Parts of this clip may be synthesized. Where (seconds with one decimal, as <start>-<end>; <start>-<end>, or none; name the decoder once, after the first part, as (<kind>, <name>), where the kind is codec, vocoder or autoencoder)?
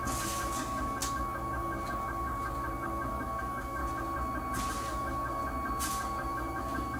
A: 0.0-3.8 (codec, DAC); 4.7-5.4; 5.9-7.0